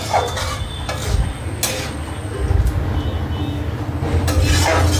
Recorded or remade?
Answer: recorded